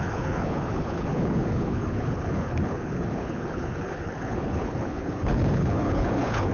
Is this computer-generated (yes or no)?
yes